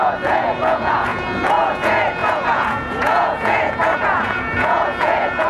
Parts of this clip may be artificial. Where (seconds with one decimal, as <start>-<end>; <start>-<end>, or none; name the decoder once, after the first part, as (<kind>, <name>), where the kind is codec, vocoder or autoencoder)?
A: 0.0-5.5 (vocoder, Vocos)